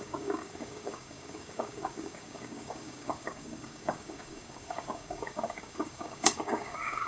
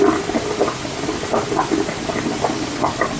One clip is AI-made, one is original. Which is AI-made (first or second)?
first